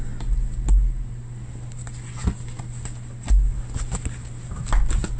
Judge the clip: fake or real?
real